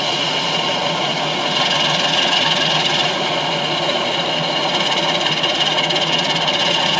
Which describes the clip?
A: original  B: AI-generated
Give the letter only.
B